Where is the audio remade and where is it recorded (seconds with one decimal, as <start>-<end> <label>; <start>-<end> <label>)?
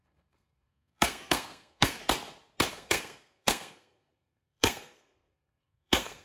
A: 0.0-2.0 remade; 2.0-2.7 recorded; 2.7-6.2 remade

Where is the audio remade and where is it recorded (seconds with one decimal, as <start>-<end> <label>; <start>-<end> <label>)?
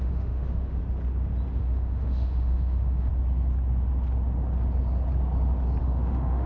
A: 0.0-0.8 remade; 0.8-1.6 recorded; 1.6-3.1 remade; 3.1-5.8 recorded; 5.8-6.5 remade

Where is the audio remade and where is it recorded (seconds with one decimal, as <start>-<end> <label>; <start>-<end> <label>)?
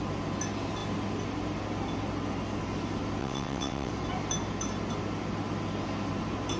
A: 0.0-3.2 recorded; 3.2-3.9 remade; 3.9-6.6 recorded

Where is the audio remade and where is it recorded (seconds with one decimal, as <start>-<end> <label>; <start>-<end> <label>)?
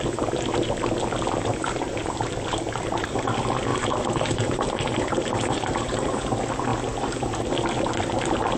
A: 0.0-3.7 recorded; 3.7-6.3 remade; 6.3-8.6 recorded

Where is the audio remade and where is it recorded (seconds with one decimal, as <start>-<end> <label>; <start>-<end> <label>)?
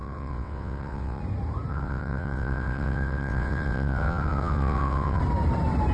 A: 0.0-1.2 remade; 1.2-1.7 recorded; 1.7-5.2 remade; 5.2-5.9 recorded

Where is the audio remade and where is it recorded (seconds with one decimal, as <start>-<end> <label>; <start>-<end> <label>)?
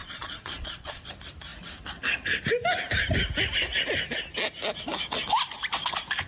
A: 0.0-1.1 remade; 1.1-6.3 recorded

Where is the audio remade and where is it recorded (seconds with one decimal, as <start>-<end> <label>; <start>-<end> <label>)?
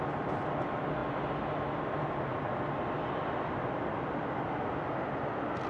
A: 0.0-5.7 recorded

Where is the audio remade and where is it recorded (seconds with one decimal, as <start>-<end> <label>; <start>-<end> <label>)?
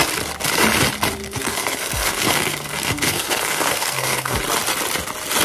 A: 0.0-1.2 recorded; 1.2-4.4 remade; 4.4-5.4 recorded